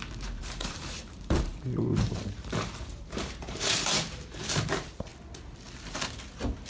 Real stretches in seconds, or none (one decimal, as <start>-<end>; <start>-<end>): 5.1-6.7